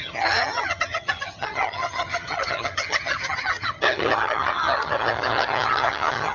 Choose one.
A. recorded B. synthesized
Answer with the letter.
B